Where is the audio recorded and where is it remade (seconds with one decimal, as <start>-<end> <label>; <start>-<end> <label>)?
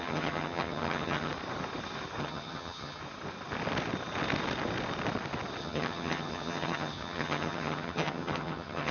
0.0-1.3 remade; 1.3-2.2 recorded; 2.2-3.0 remade; 3.0-5.6 recorded; 5.6-8.9 remade